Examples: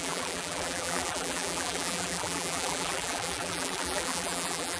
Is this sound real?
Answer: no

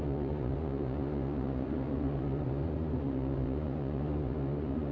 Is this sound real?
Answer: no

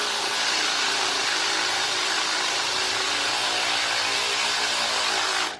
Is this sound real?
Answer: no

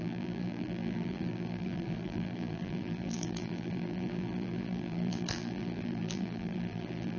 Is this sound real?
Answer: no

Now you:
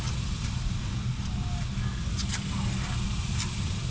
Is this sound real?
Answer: yes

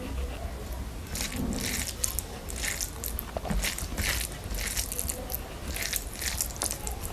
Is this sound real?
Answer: yes